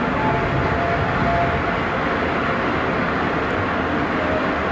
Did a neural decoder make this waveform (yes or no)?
no